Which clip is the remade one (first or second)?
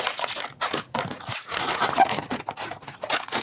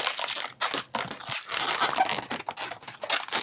first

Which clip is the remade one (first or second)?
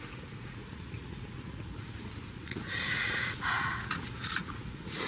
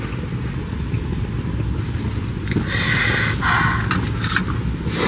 first